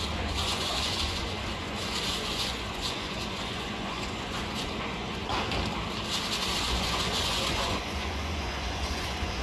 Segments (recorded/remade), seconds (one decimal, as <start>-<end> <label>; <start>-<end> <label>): 0.0-5.3 remade; 5.3-6.6 recorded; 6.6-9.4 remade